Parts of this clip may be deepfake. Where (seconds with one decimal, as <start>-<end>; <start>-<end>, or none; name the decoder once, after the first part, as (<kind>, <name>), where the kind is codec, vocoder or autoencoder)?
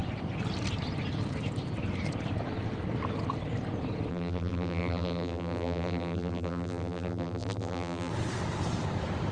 4.1-8.1 (vocoder, BigVGAN v2)